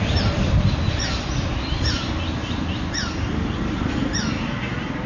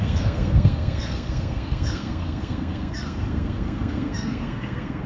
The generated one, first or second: second